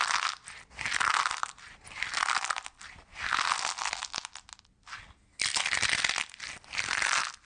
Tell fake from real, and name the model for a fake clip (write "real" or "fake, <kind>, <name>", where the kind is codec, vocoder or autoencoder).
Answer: real